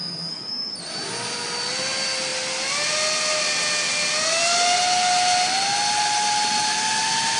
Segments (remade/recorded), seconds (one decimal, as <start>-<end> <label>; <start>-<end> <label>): 0.0-0.7 remade; 0.7-7.4 recorded